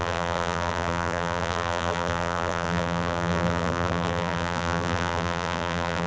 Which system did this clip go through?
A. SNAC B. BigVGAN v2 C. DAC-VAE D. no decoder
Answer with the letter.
B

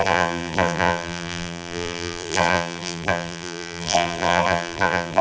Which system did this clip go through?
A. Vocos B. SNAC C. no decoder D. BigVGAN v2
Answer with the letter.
D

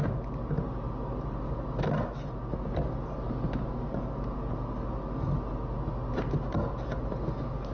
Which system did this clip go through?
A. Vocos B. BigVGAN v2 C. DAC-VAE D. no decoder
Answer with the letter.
D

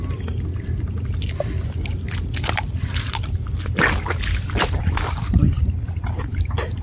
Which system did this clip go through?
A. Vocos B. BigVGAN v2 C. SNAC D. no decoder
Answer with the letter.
D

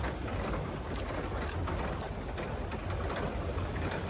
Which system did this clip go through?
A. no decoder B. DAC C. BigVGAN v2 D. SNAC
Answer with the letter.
A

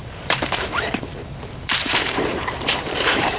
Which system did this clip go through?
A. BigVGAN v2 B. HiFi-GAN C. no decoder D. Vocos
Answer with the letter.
A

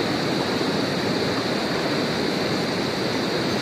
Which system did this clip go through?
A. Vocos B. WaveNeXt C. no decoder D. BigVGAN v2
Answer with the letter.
C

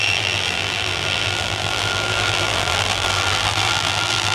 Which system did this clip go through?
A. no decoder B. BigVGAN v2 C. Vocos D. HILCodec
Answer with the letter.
B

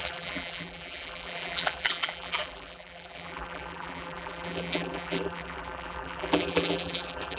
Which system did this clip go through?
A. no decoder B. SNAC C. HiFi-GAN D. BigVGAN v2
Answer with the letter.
D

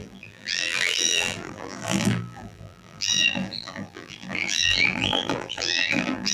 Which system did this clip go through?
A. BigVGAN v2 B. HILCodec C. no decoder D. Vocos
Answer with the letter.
A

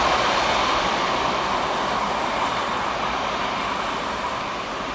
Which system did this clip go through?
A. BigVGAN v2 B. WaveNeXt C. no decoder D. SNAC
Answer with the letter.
A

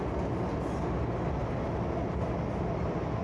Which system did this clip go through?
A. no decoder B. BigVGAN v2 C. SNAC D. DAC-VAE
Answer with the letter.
A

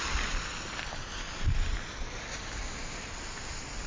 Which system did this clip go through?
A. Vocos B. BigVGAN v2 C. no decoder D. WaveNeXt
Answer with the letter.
C